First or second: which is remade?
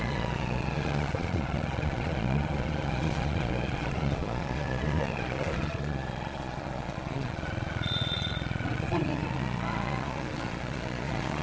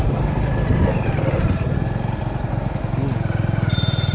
first